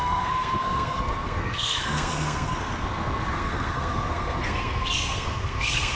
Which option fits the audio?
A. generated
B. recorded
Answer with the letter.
A